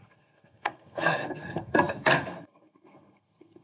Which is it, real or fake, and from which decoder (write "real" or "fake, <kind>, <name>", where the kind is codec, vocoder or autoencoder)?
fake, codec, SNAC